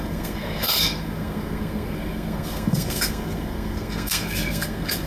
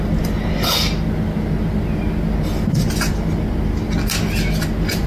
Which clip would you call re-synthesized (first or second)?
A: first